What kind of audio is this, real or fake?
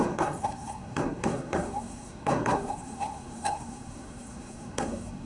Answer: fake